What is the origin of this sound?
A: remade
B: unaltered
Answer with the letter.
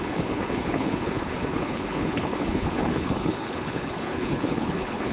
A